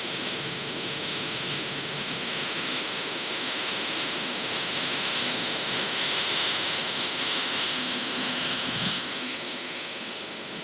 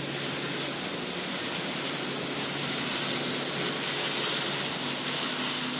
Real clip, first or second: second